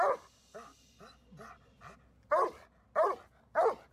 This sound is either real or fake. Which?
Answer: real